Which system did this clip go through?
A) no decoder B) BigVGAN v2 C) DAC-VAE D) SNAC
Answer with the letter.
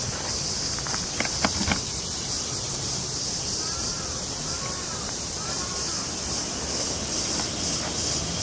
A